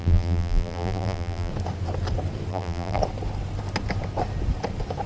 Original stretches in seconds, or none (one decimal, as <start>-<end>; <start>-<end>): 1.5-2.5; 3.0-5.1